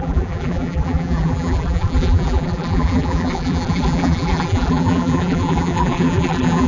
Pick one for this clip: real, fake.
fake